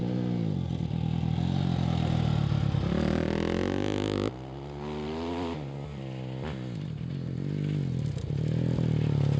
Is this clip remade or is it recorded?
recorded